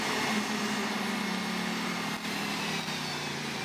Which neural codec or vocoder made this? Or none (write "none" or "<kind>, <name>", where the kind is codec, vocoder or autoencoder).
vocoder, BigVGAN v2